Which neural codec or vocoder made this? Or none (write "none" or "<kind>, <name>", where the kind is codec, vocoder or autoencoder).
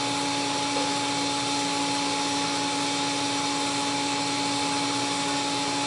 none